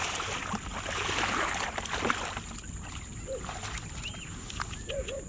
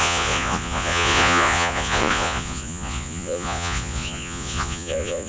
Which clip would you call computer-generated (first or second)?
second